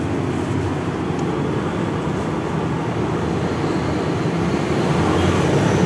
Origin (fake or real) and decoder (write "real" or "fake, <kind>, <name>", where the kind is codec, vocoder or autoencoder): real